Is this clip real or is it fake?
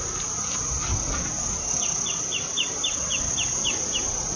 real